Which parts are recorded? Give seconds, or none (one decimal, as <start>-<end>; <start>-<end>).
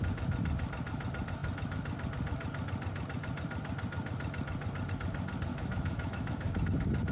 0.0-5.5; 6.6-7.1